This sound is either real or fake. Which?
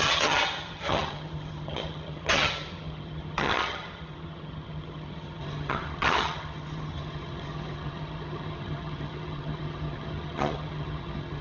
fake